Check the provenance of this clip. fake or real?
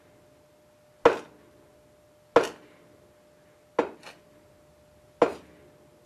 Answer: real